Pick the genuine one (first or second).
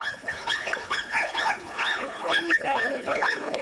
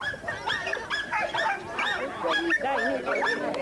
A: second